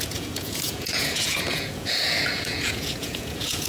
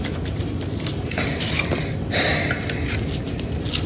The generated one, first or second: first